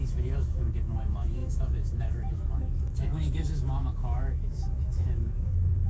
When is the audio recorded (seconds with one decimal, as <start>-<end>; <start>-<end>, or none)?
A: none